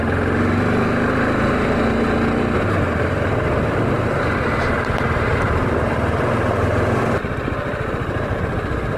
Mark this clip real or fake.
real